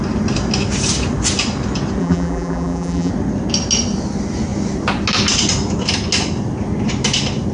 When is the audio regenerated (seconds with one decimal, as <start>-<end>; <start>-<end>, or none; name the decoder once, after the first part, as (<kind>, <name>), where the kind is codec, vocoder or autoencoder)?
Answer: 2.0-3.1 (vocoder, BigVGAN v2)